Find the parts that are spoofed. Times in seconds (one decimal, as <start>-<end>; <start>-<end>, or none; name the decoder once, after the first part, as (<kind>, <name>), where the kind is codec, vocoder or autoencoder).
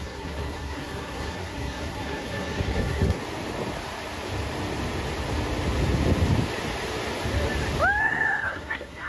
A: 0.0-3.2 (codec, SNAC); 8.0-9.1